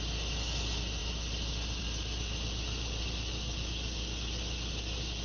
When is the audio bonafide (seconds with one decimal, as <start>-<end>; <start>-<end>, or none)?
0.0-5.2